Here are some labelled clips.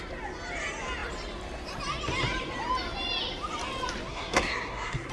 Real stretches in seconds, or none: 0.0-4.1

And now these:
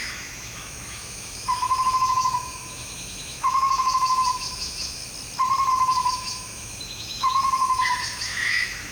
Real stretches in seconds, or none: 5.0-5.7

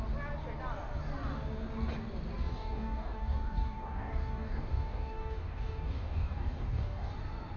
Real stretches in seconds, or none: 0.0-2.5; 7.1-7.6

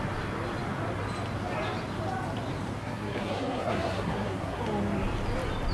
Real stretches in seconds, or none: 0.0-2.8; 4.6-5.7